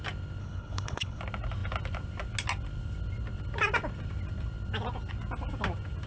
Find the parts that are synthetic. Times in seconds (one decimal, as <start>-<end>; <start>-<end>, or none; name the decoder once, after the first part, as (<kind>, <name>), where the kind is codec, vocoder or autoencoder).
0.4-1.2 (codec, HILCodec)